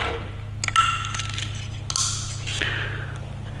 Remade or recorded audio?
recorded